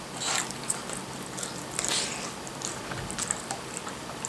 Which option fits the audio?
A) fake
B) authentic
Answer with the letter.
B